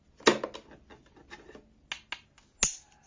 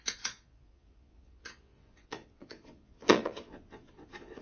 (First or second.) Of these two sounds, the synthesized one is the second